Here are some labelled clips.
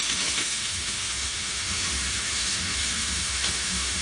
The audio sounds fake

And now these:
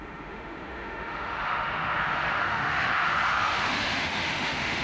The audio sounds fake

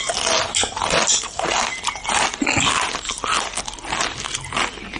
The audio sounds real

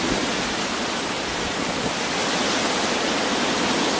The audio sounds real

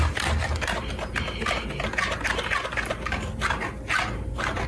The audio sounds real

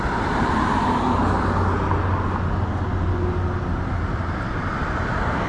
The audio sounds real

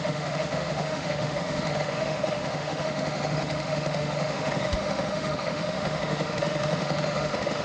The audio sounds fake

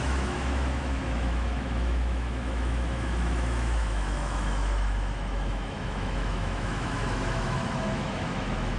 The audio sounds fake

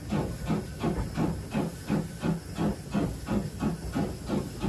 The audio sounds real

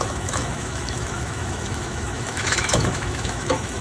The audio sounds fake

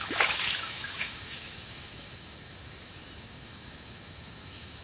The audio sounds fake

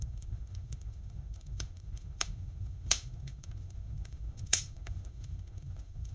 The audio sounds fake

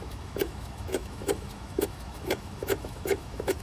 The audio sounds fake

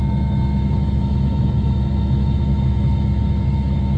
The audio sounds fake